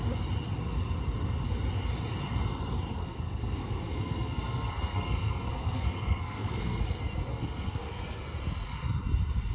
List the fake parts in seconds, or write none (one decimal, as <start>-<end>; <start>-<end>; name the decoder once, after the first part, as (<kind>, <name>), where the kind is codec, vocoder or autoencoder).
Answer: 3.0-6.8 (codec, SNAC); 7.3-8.0